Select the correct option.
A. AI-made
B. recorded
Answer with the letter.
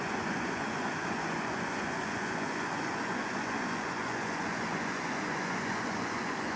A